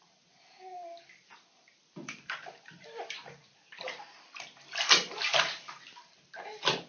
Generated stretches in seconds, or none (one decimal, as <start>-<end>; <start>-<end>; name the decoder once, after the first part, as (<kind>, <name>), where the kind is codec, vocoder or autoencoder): none